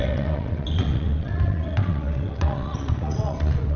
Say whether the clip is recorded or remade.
remade